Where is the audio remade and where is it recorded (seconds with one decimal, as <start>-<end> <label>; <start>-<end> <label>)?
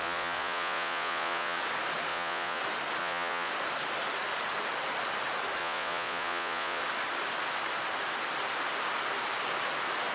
0.0-1.6 remade; 1.6-2.1 recorded; 2.1-2.6 remade; 2.6-3.0 recorded; 3.0-3.5 remade; 3.5-5.6 recorded; 5.6-6.8 remade; 6.8-10.1 recorded